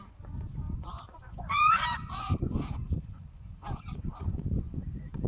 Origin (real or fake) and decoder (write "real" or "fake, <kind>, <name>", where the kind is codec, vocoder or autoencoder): fake, vocoder, Vocos